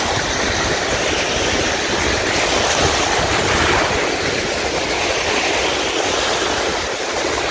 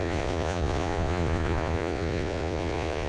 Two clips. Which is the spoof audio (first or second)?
second